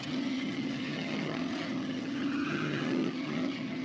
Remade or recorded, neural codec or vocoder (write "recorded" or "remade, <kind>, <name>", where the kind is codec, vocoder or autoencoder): remade, vocoder, HiFi-GAN